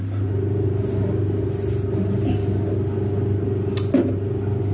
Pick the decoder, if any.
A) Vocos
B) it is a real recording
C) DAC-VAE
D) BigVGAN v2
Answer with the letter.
B